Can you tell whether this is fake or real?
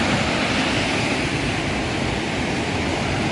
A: real